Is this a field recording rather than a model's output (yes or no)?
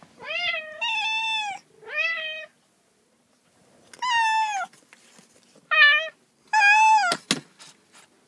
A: yes